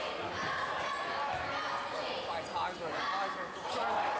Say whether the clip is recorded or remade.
recorded